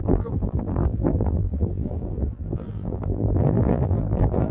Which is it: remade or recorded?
remade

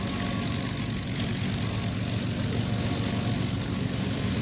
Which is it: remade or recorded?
recorded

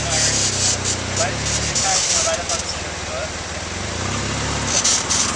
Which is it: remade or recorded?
recorded